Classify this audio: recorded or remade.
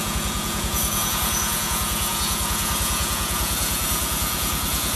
remade